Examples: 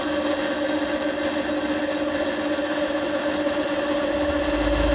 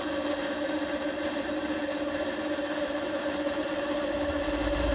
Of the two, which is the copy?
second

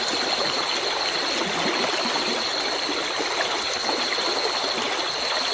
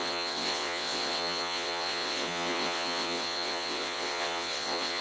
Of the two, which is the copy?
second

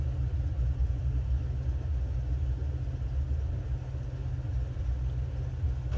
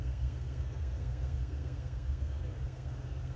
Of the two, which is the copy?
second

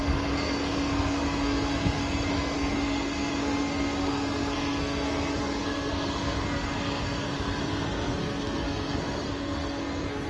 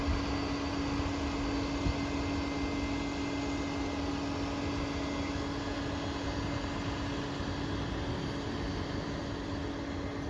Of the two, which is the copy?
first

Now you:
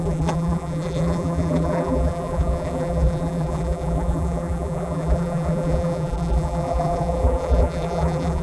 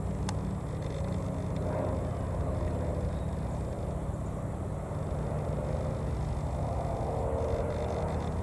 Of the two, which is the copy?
first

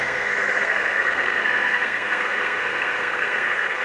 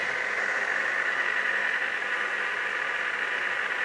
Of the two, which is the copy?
first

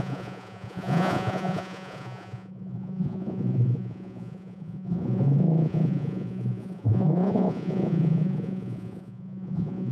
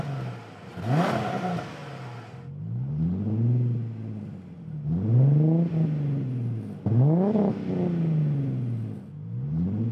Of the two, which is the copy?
first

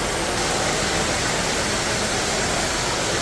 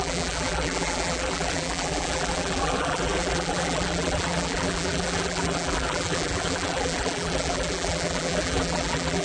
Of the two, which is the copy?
second